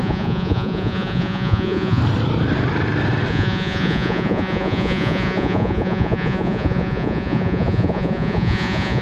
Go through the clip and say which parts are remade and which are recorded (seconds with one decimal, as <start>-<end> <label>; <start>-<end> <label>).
0.0-2.0 remade; 2.0-3.3 recorded; 3.3-9.0 remade